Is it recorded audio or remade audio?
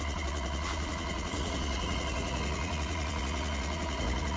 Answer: remade